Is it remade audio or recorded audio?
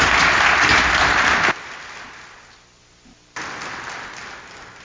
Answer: recorded